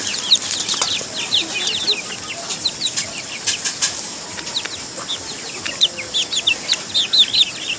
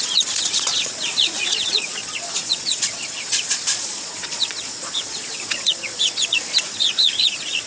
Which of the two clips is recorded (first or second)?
first